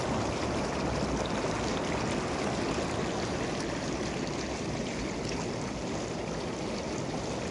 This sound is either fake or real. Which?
real